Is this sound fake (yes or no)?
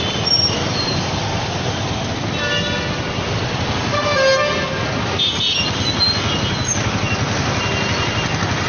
no